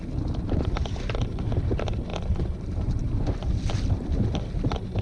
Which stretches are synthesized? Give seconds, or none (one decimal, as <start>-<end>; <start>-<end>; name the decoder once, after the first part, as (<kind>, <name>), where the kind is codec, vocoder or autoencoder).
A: 2.1-3.2 (vocoder, BigVGAN v2)